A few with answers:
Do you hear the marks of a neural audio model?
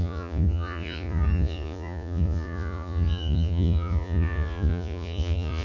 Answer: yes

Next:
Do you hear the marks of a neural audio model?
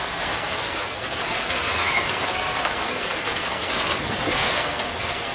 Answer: yes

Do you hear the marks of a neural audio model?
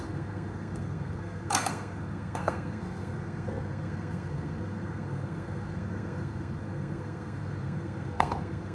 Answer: yes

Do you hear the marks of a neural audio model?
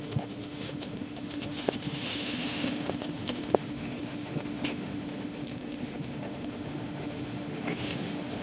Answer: yes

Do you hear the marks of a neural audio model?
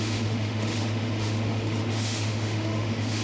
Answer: yes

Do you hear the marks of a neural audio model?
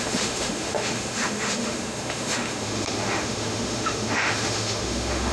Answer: yes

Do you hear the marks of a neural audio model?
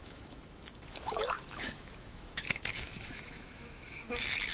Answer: yes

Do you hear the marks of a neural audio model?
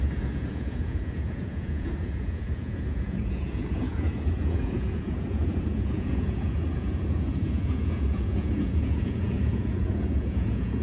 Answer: yes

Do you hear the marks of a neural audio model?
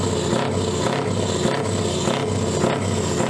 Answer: no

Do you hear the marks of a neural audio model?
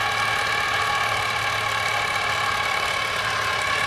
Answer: no